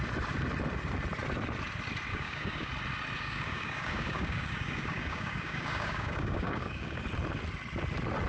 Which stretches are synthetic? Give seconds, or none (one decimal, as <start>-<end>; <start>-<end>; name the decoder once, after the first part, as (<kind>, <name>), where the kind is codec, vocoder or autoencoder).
2.1-2.7 (codec, DAC); 3.2-7.0